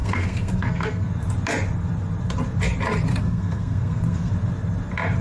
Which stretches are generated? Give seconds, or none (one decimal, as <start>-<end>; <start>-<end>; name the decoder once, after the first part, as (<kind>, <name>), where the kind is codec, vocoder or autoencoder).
0.0-1.1 (codec, SNAC); 3.1-4.3